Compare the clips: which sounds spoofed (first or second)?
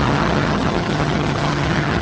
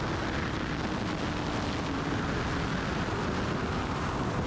first